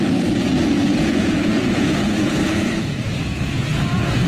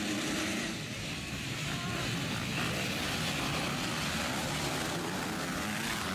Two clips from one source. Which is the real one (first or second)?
second